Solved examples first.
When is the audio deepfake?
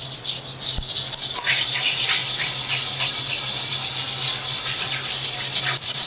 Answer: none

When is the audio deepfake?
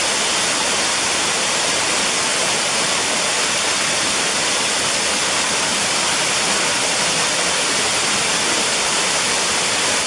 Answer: none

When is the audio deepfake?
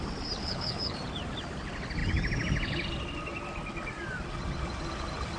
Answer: 0.4-1.0 (codec, HILCodec)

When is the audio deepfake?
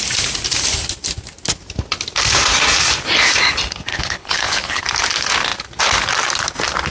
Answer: 3.9-4.8 (codec, HILCodec)